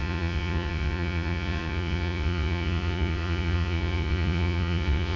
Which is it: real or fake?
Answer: fake